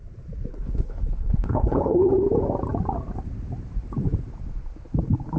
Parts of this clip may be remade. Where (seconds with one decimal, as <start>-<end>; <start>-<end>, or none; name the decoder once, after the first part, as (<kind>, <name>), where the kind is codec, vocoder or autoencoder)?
0.5-2.1 (codec, HILCodec)